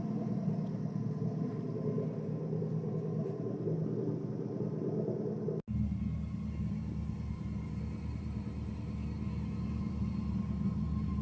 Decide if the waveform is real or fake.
real